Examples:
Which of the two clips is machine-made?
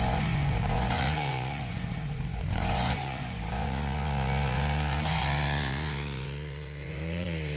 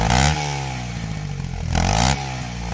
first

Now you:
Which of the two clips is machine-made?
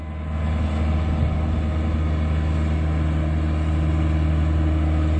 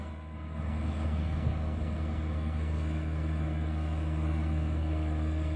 second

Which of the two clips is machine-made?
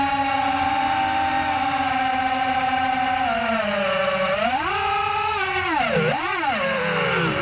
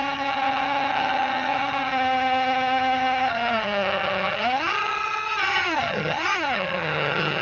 second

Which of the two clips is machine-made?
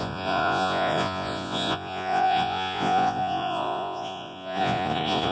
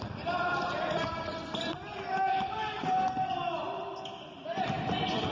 first